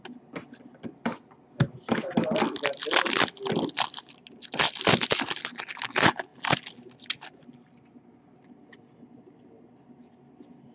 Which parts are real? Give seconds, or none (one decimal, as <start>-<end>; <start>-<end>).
0.0-10.7